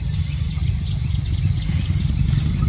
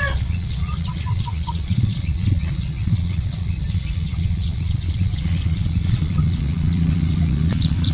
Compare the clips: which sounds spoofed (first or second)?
second